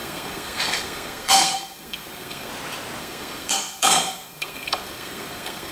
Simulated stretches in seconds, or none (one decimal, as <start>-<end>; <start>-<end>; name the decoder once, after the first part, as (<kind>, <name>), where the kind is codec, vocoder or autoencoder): 0.0-2.5 (codec, SNAC); 3.0-5.7